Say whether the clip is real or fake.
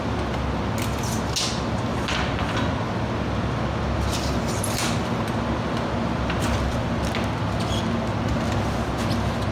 real